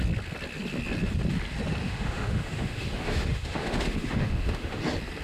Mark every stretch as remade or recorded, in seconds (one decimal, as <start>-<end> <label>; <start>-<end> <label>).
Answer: 0.0-1.8 recorded; 1.8-4.8 remade; 4.8-5.2 recorded